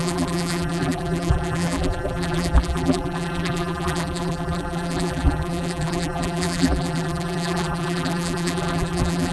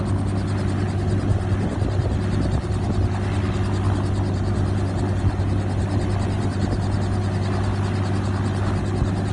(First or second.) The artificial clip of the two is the first